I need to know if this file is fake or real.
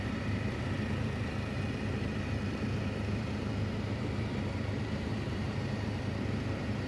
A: fake